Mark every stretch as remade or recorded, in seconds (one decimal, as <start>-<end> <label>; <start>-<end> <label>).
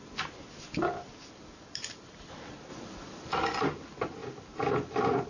0.0-5.3 recorded